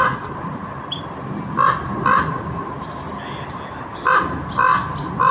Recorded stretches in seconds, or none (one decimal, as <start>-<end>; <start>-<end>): 1.1-5.3